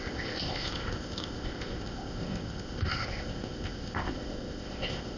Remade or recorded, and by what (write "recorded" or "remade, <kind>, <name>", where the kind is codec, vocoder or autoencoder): remade, codec, ZipCodec